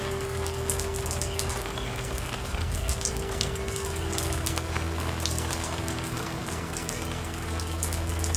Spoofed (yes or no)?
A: yes